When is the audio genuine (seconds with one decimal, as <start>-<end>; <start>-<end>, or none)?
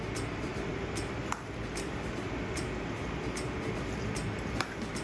0.0-5.0